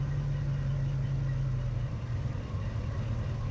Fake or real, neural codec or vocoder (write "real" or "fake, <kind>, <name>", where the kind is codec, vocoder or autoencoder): real